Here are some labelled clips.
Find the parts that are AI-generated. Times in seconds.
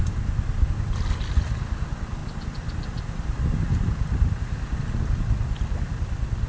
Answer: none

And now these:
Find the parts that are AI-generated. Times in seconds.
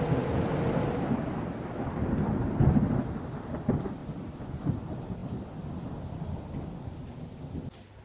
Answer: 4.0-4.7; 5.2-7.4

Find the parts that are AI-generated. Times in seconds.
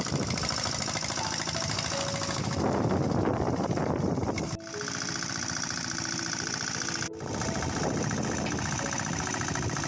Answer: none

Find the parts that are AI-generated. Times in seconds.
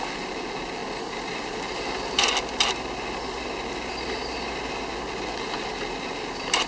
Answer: none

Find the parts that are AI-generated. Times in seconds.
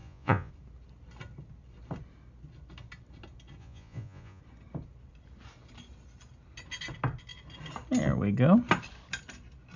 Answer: 0.0-0.5; 3.6-4.4